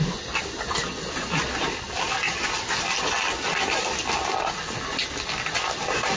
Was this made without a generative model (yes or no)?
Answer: yes